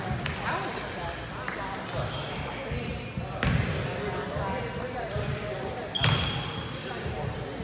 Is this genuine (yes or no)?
yes